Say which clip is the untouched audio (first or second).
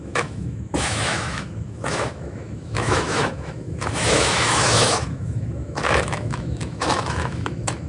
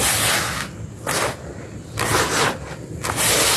second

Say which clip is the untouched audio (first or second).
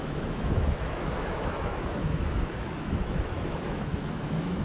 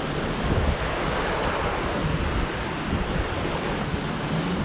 second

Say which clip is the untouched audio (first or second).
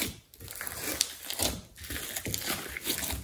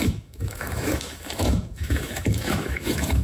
first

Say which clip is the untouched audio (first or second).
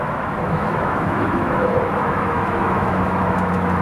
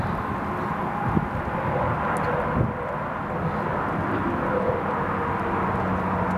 second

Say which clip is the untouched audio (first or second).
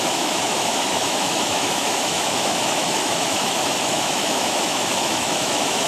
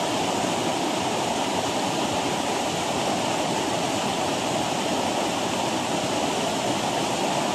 second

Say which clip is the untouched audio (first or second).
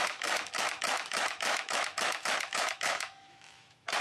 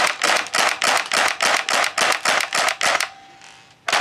second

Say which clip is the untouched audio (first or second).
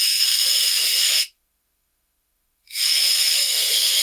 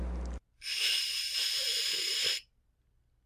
second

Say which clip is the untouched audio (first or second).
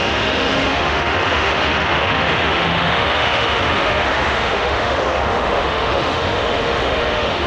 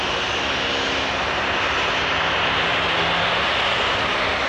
second